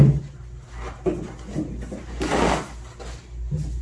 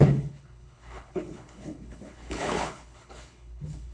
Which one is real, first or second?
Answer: first